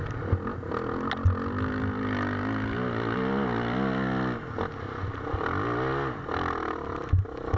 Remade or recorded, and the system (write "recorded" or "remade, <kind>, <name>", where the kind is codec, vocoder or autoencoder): recorded